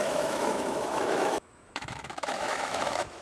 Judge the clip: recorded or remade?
remade